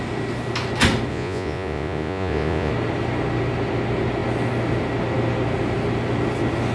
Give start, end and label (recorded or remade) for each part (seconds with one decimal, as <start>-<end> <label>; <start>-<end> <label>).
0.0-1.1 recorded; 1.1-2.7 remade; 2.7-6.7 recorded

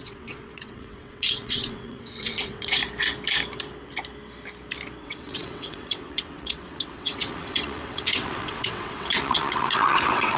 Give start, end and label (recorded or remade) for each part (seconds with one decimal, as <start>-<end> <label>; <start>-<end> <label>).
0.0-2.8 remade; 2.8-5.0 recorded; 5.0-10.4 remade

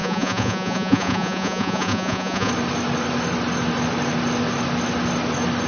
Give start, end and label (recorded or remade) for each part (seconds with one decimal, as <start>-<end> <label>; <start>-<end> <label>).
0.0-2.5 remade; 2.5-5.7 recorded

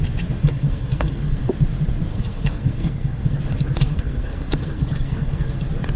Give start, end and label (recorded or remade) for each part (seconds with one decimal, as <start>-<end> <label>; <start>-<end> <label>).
0.0-0.4 recorded; 0.4-1.5 remade; 1.5-2.1 recorded; 2.1-3.4 remade; 3.4-3.8 recorded; 3.8-5.6 remade; 5.6-6.0 recorded

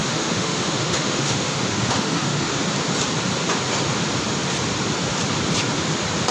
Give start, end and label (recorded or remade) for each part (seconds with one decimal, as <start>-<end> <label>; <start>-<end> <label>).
0.0-2.6 remade; 2.6-6.3 recorded

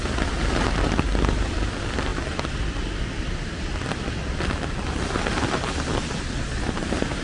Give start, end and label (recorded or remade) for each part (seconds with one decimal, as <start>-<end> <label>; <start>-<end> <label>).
0.0-7.2 recorded

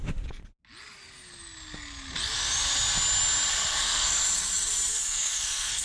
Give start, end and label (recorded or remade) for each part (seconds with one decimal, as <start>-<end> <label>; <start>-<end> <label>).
0.0-3.5 recorded; 3.5-4.2 remade; 4.2-4.9 recorded; 4.9-5.8 remade

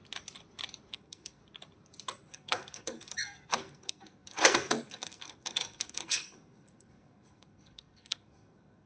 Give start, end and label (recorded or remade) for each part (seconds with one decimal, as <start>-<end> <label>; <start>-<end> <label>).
0.0-0.9 recorded; 0.9-1.4 remade; 1.4-2.3 recorded; 2.3-8.9 remade